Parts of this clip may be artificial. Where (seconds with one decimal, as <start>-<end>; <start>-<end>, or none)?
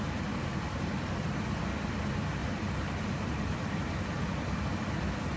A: 0.5-1.1; 2.4-4.0